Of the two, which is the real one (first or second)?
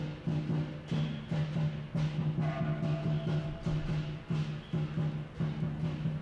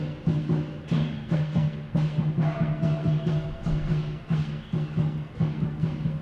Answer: first